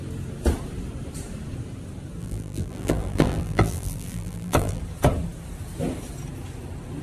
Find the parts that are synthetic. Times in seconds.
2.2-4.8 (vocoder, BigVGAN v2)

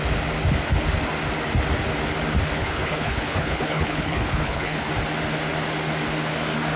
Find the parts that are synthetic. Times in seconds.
2.6-4.9 (codec, HILCodec)

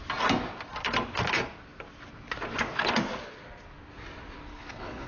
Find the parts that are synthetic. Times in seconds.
4.5-5.1 (codec, HILCodec)

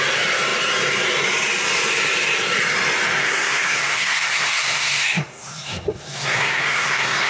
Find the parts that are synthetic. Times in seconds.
3.2-7.3 (codec, SNAC)

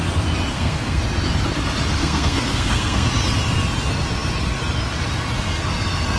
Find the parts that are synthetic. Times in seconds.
0.5-1.0 (codec, SNAC); 2.0-3.1

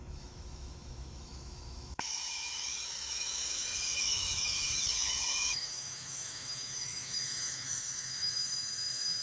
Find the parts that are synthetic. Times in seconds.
0.0-9.2 (autoencoder, DAC-VAE)